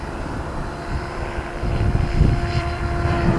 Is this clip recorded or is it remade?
remade